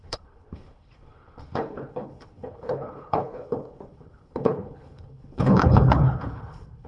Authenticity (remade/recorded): remade